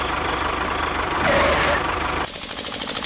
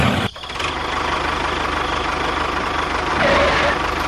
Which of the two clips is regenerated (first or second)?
first